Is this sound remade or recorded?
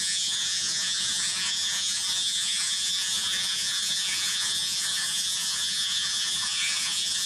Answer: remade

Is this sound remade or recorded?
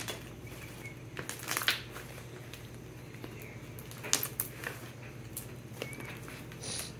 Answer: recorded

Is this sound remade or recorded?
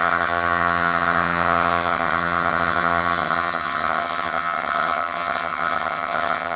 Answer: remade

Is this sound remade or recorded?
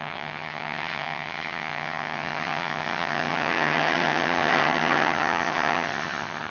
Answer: remade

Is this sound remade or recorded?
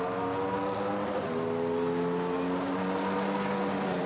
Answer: recorded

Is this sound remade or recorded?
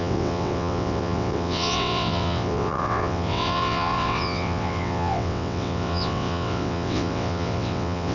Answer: remade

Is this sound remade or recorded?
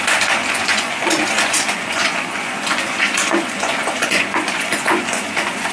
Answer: remade